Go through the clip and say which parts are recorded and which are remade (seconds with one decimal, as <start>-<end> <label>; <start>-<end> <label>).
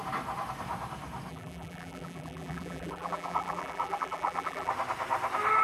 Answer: 0.0-1.3 recorded; 1.3-4.7 remade; 4.7-5.6 recorded